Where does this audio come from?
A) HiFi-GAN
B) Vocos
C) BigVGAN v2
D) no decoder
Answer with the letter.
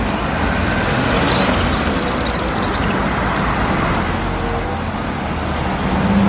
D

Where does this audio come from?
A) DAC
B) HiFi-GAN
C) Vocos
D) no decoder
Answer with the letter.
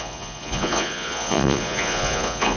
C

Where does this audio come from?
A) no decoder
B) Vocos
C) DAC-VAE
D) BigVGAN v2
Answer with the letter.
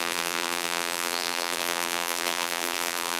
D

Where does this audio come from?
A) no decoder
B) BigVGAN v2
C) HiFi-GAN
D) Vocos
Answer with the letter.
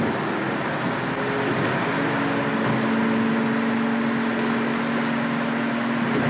A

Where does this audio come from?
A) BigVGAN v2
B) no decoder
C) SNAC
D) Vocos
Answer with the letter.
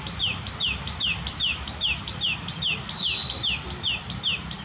A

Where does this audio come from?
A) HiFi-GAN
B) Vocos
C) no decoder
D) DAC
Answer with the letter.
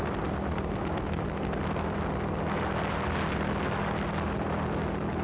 C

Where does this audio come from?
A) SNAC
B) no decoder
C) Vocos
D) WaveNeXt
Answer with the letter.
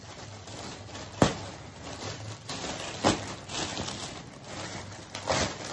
B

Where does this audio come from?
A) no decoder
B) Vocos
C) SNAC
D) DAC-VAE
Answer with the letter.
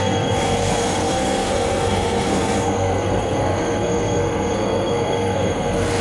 C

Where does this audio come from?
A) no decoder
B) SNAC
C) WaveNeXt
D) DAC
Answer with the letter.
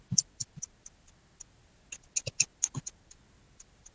A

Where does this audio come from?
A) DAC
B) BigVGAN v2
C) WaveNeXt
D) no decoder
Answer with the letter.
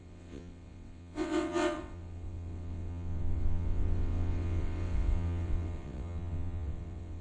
C